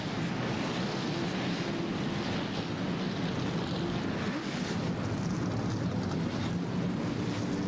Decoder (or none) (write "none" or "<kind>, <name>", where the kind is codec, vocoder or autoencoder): none